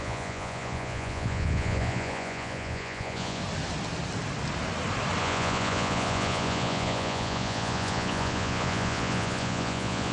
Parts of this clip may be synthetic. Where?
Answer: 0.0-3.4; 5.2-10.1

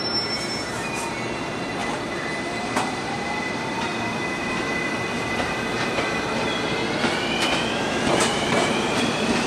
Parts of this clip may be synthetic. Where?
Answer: 0.0-1.8; 2.5-3.9; 4.6-6.8; 7.7-9.5

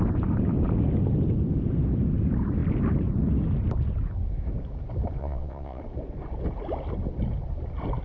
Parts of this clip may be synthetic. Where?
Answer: 5.2-5.8

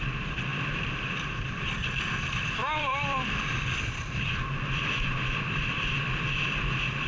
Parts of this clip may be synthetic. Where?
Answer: 0.5-4.8

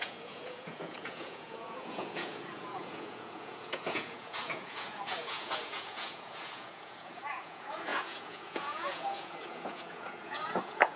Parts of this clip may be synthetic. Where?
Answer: 0.0-11.0

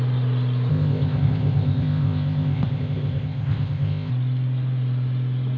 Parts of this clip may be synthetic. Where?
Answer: 0.7-4.1